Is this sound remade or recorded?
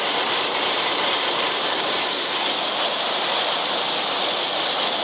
recorded